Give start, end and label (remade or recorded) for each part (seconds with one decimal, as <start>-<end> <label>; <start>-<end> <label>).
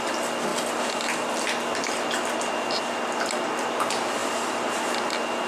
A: 0.0-0.5 recorded; 0.5-1.3 remade; 1.3-4.2 recorded; 4.2-4.8 remade; 4.8-5.5 recorded